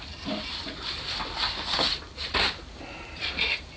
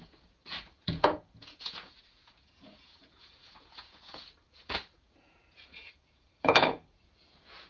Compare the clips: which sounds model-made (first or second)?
second